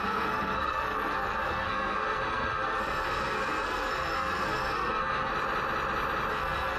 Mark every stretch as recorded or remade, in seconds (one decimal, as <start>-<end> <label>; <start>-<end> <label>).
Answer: 0.0-5.3 remade; 5.3-6.3 recorded; 6.3-6.8 remade